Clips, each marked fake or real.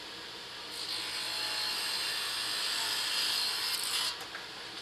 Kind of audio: real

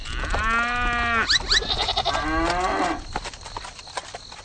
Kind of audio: real